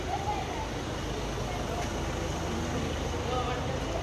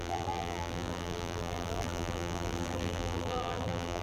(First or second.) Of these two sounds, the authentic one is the first